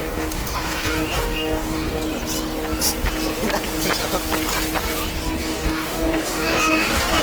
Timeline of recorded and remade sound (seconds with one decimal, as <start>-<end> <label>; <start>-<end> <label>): 0.0-2.0 remade; 2.0-5.4 recorded; 5.4-7.2 remade